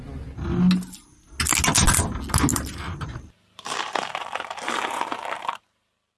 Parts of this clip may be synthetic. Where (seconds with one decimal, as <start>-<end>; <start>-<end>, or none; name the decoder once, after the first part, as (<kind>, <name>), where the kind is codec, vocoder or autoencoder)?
2.5-5.6 (vocoder, BigVGAN v2)

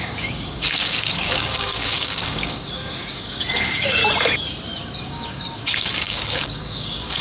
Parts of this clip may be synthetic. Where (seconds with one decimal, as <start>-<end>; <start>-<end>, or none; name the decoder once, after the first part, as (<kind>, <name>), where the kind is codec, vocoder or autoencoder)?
0.0-4.0 (codec, DAC); 5.0-7.2

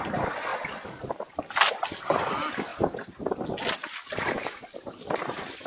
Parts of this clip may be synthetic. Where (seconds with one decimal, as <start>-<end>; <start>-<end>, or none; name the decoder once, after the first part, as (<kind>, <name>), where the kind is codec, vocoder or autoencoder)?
3.8-5.2 (vocoder, BigVGAN v2)

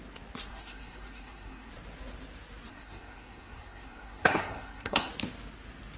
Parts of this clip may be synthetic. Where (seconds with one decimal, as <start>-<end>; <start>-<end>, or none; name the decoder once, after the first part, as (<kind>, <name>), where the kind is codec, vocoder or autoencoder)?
0.5-1.7 (codec, SNAC); 2.7-5.1

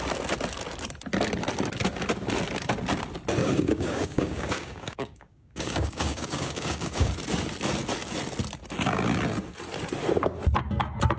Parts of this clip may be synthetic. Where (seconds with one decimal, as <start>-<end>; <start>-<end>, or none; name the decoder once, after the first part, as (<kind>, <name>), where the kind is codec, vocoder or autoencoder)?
3.4-7.1 (codec, DAC)

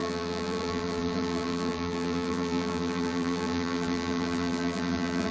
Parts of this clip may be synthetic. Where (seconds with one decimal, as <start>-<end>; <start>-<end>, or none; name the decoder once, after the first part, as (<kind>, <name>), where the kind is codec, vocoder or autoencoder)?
0.0-5.3 (vocoder, BigVGAN v2)

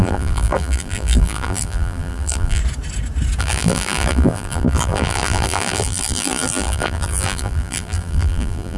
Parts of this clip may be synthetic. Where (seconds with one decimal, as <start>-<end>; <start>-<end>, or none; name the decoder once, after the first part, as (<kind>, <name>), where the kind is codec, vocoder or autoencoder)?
0.0-2.6 (vocoder, BigVGAN v2); 3.4-8.8

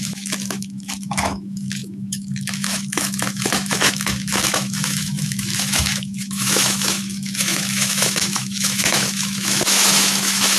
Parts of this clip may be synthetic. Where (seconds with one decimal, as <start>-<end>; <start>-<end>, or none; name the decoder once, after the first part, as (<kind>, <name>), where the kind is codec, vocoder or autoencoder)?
0.0-10.6 (autoencoder, DAC-VAE)